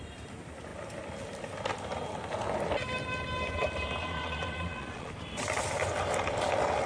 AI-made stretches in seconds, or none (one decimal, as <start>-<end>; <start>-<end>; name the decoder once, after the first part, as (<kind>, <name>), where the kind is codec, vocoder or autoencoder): 4.0-5.1 (vocoder, Vocos)